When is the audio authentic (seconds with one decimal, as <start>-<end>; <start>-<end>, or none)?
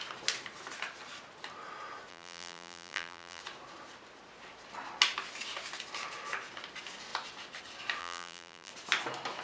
0.0-2.1; 3.4-8.0; 8.7-9.4